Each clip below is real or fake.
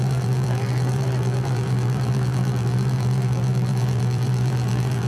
fake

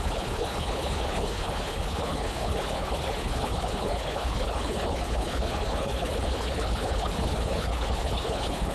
fake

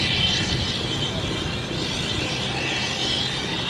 real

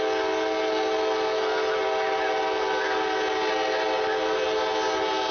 real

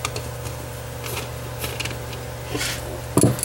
real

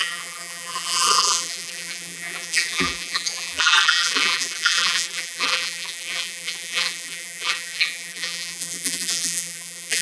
fake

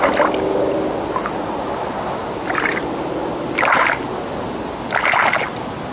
real